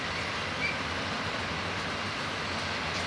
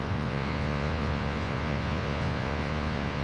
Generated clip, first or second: second